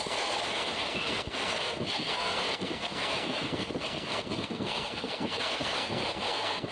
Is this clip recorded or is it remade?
remade